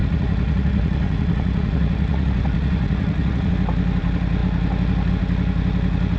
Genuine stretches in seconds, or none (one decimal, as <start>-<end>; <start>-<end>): 3.5-6.2

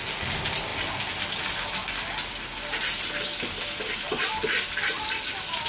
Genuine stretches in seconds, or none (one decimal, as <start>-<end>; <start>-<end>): 0.0-5.7

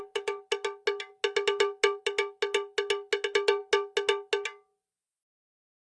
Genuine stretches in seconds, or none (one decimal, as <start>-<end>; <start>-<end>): 0.0-5.8

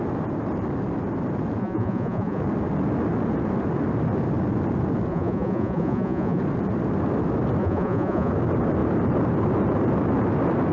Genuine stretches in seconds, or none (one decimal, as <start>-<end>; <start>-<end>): 0.0-1.6; 2.4-5.1; 6.4-7.6; 8.3-10.7